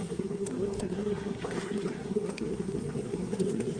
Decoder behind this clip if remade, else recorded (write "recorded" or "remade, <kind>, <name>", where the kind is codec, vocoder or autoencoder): remade, codec, SNAC